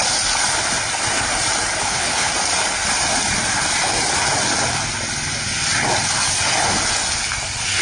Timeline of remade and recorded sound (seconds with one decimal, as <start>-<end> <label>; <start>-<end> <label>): 0.0-1.8 recorded; 1.8-2.3 remade; 2.3-7.8 recorded